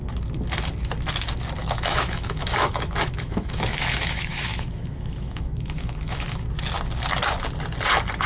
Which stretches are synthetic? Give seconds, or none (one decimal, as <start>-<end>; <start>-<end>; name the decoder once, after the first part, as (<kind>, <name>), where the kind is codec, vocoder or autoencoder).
1.6-6.4 (autoencoder, DAC-VAE)